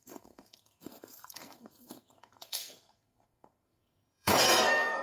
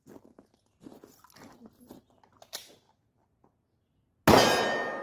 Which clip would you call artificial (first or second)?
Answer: first